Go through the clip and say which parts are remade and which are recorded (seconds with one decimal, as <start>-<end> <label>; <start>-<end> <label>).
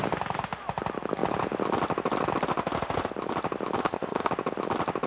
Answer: 0.0-3.8 recorded; 3.8-4.3 remade; 4.3-5.1 recorded